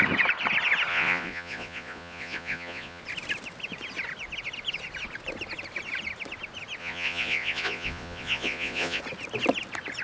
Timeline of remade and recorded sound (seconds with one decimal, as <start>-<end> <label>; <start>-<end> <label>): 0.0-0.9 recorded; 0.9-3.0 remade; 3.0-6.8 recorded; 6.8-9.0 remade; 9.0-10.0 recorded